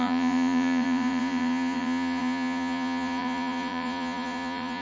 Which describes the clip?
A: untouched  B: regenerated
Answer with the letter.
B